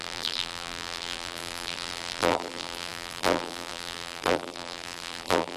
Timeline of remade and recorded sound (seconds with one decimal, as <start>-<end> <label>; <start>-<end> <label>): 0.0-5.6 remade